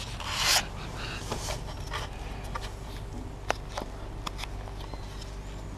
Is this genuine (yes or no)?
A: yes